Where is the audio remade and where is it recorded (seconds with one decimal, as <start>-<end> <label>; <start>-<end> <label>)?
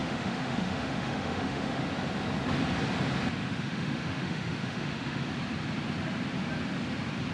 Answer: 0.0-1.8 remade; 1.8-3.4 recorded; 3.4-5.3 remade; 5.3-7.3 recorded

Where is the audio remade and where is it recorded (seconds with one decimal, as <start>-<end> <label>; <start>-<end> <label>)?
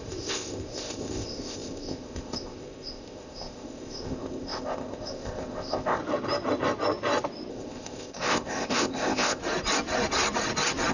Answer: 0.0-6.0 remade; 6.0-7.5 recorded; 7.5-9.4 remade; 9.4-10.9 recorded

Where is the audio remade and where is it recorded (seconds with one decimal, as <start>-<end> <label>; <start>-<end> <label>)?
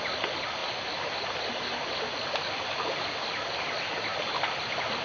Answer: 0.0-5.0 recorded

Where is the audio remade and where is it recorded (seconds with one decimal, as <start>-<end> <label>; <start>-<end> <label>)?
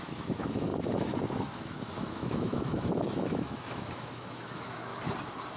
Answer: 0.0-4.9 remade; 4.9-5.6 recorded